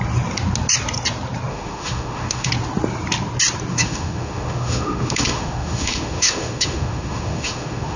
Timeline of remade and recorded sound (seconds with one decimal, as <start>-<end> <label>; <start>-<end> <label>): 0.0-1.5 recorded; 1.5-2.5 remade; 2.5-3.7 recorded; 3.7-8.0 remade